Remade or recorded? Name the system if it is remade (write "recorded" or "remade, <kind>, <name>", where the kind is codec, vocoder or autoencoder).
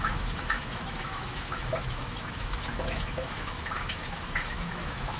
remade, autoencoder, DAC-VAE